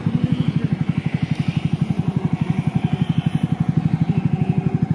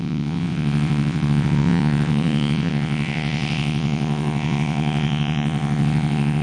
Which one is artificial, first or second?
second